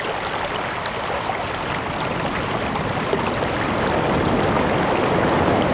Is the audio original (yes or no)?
no